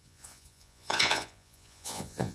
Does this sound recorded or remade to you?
remade